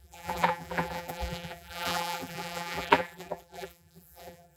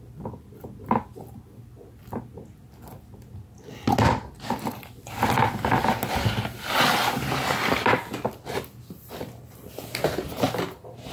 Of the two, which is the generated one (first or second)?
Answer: first